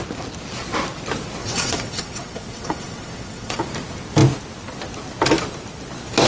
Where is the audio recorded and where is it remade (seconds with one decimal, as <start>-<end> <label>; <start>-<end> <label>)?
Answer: 0.0-1.4 recorded; 1.4-3.6 remade; 3.6-6.3 recorded